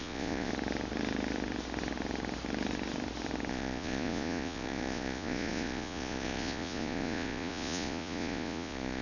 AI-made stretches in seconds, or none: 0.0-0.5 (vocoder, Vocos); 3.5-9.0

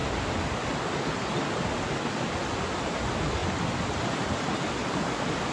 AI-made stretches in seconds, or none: none

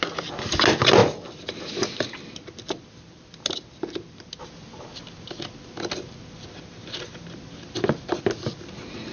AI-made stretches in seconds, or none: none

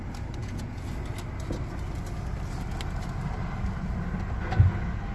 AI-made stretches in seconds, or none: 0.4-0.9 (vocoder, Vocos)

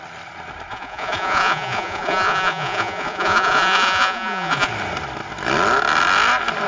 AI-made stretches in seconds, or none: 0.7-4.7 (vocoder, Vocos)

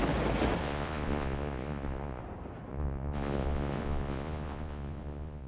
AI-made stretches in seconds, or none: 0.6-2.2 (vocoder, Vocos); 2.7-5.5